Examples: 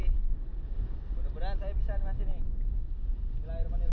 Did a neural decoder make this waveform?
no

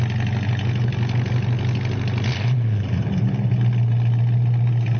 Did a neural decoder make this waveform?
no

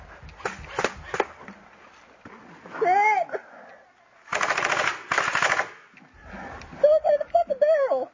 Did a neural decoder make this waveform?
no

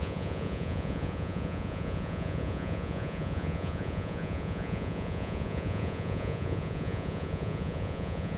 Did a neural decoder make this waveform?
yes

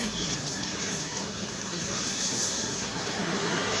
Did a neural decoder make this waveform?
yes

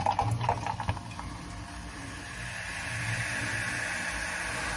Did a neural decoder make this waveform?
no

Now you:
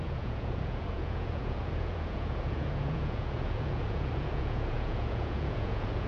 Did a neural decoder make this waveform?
yes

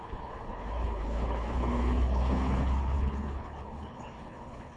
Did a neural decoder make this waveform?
yes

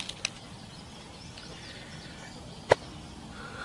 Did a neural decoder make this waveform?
no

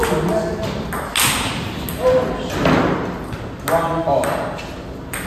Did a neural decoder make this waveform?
no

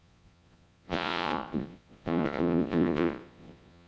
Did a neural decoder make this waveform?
yes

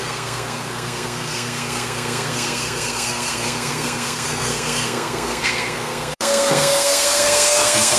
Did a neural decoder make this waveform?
yes